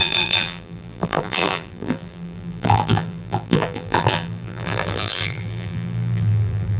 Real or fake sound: fake